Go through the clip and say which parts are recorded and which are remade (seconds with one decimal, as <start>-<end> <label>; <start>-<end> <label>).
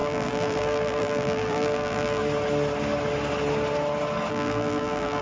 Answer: 0.0-2.2 remade; 2.2-4.3 recorded; 4.3-5.2 remade